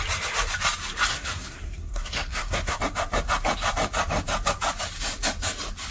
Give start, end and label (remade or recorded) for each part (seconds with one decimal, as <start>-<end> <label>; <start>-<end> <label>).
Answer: 0.0-1.1 recorded; 1.1-2.8 remade; 2.8-5.9 recorded